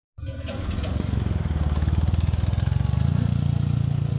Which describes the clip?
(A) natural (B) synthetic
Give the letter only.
A